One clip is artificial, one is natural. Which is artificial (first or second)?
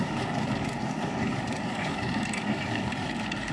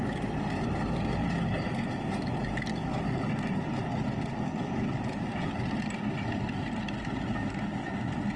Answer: first